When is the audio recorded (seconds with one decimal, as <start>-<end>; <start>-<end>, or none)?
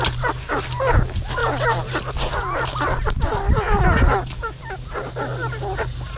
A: 0.0-6.2